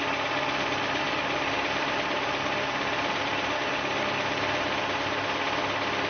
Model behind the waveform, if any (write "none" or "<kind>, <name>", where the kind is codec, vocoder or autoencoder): none